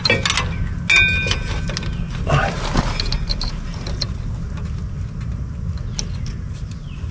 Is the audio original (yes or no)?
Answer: yes